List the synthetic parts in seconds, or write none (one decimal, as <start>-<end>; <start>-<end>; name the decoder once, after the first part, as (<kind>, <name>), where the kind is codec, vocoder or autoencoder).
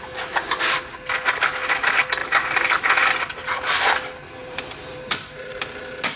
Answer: 2.2-2.8 (vocoder, BigVGAN v2); 4.4-5.5